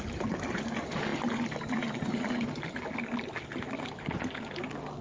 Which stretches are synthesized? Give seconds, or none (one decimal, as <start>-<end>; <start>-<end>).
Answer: none